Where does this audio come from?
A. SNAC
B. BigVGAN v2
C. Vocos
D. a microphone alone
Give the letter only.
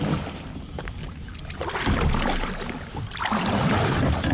D